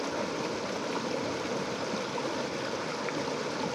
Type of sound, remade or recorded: recorded